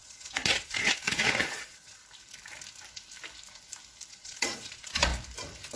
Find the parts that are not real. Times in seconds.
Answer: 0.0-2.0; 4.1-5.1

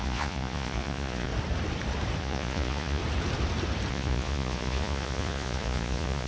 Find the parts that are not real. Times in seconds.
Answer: 0.0-1.3; 2.2-3.0; 3.9-6.3

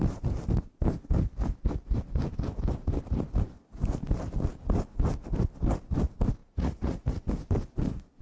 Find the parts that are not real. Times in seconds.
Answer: 6.4-7.1

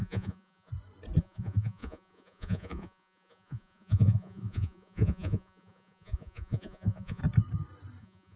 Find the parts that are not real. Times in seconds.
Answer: 0.0-0.7; 1.2-7.2; 8.0-8.4

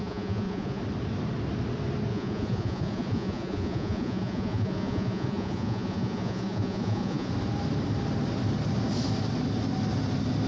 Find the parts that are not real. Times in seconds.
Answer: 0.0-0.8; 2.1-7.3

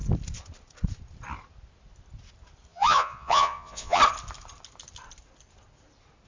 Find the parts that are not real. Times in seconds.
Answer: 2.7-4.0